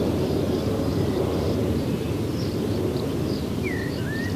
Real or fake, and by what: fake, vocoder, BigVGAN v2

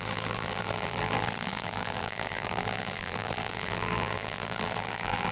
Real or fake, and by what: fake, vocoder, BigVGAN v2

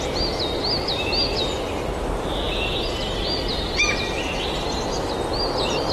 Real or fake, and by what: real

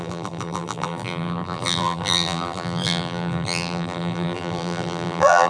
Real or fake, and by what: fake, vocoder, BigVGAN v2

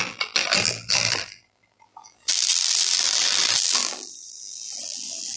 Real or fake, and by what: fake, vocoder, BigVGAN v2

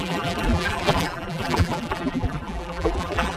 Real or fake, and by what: fake, vocoder, BigVGAN v2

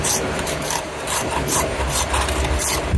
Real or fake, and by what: fake, vocoder, BigVGAN v2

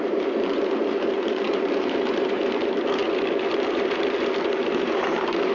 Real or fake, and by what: fake, vocoder, BigVGAN v2